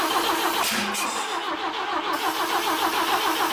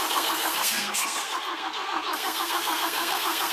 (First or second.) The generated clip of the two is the second